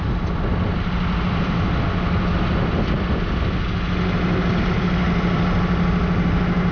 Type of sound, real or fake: real